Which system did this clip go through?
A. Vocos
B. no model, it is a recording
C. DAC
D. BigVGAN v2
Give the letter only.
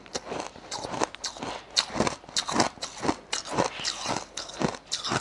B